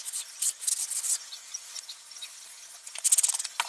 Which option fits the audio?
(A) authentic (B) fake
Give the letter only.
A